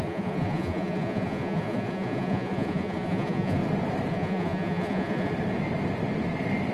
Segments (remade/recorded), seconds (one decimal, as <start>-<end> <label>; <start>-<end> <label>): 0.0-3.6 remade; 3.6-4.1 recorded; 4.1-5.3 remade; 5.3-6.7 recorded